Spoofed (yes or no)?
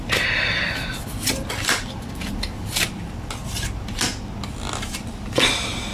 no